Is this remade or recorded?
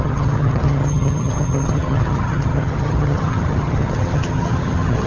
remade